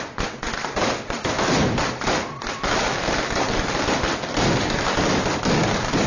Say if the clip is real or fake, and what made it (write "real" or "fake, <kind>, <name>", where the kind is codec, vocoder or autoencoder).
real